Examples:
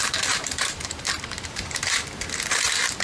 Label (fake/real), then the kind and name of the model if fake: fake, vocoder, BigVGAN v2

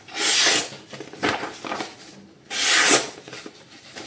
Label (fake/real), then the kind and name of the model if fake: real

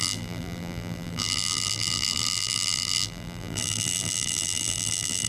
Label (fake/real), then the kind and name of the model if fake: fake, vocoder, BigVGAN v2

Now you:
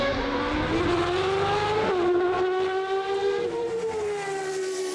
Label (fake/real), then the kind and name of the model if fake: real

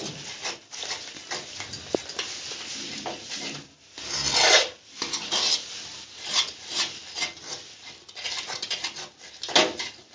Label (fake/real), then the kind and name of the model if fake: real